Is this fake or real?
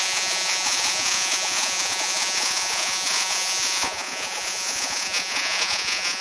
fake